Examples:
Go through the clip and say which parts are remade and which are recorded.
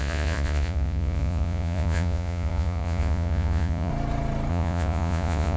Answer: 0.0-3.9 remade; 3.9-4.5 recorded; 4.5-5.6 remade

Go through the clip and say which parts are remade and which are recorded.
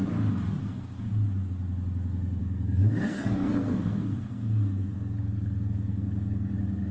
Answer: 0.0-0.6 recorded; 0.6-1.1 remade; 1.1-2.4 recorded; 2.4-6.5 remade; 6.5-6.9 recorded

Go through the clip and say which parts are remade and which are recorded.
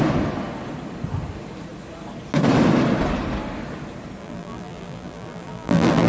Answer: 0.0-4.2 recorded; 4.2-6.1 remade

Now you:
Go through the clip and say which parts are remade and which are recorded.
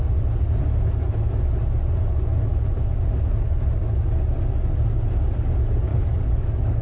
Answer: 0.0-5.9 recorded; 5.9-6.8 remade